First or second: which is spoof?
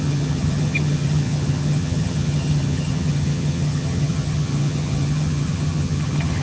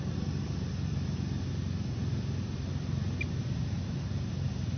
first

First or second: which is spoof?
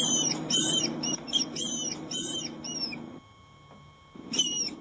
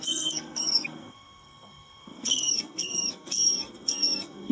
second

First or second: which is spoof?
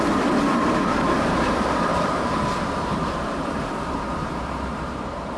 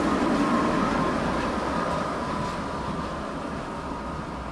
first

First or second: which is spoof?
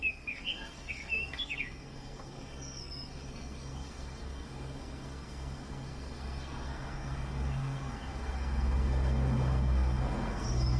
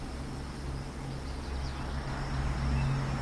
first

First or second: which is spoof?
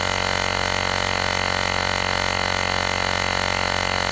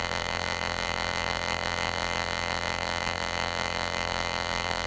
second